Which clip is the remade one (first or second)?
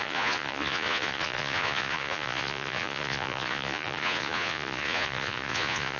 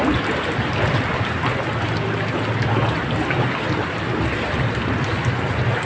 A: first